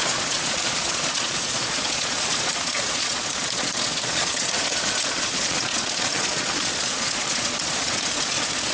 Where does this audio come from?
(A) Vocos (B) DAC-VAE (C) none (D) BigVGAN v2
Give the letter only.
A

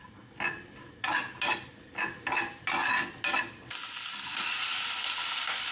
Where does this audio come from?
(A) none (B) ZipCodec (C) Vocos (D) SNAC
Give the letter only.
A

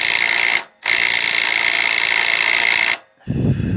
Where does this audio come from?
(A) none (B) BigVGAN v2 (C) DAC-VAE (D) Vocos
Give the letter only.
A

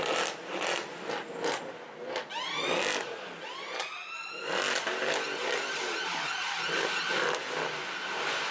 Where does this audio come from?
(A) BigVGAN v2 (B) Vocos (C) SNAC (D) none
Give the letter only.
D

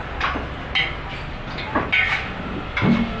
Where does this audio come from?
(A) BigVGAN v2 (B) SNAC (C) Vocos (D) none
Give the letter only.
D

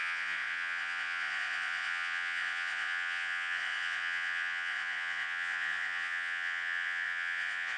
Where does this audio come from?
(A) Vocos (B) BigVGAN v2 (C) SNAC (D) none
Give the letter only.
A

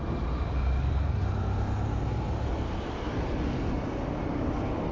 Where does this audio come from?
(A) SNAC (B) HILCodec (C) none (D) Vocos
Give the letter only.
C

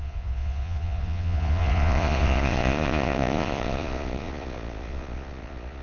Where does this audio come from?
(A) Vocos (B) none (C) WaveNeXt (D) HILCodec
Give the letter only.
A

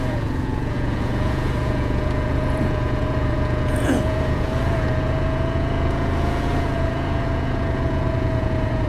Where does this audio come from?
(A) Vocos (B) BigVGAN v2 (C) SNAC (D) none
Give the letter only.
A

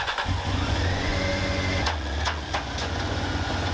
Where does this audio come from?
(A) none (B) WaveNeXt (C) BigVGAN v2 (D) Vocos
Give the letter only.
D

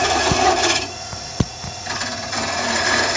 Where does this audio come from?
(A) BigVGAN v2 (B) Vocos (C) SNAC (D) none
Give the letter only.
B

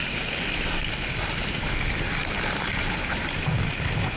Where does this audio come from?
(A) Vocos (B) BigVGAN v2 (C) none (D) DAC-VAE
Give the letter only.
C